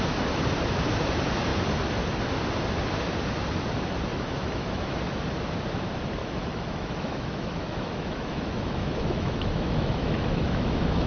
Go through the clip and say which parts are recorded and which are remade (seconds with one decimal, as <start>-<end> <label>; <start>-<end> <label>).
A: 0.0-4.1 recorded; 4.1-5.0 remade; 5.0-6.2 recorded; 6.2-11.1 remade